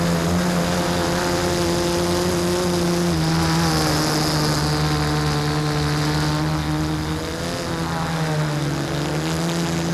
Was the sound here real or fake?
real